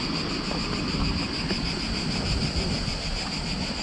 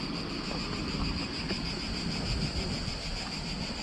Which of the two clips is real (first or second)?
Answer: second